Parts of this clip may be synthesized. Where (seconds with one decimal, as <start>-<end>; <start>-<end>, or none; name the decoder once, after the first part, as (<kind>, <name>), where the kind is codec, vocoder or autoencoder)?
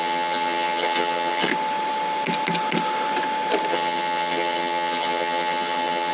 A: 0.0-1.5 (vocoder, HiFi-GAN); 3.7-6.1